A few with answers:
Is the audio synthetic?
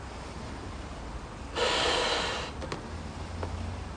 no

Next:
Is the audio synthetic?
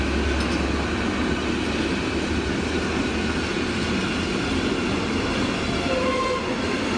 no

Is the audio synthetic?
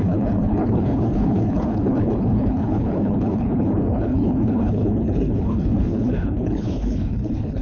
yes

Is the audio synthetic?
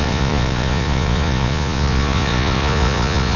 yes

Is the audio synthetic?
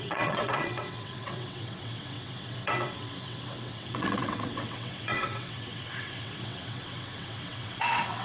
yes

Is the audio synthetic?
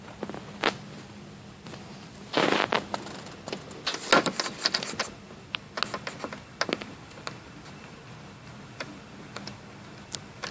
no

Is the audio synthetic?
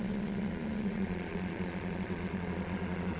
yes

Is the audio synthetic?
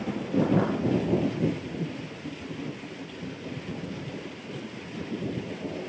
no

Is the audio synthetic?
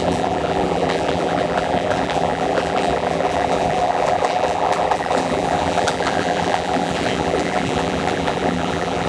yes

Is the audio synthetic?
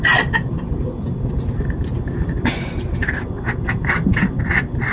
no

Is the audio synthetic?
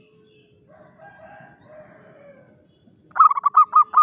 no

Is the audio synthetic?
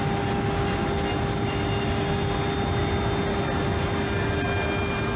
no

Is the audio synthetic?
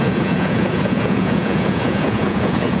yes